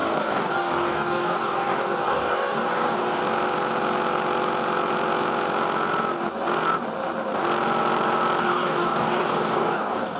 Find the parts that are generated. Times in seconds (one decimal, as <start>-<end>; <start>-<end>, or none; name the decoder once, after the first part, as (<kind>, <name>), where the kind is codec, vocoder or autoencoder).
0.0-3.2 (codec, DAC); 8.4-10.2